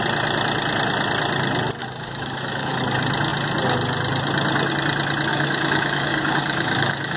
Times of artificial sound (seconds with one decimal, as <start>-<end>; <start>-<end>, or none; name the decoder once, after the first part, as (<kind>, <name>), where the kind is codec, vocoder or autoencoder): 1.8-2.8 (codec, DAC); 5.3-7.2